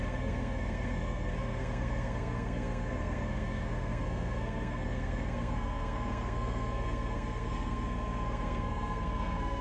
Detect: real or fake fake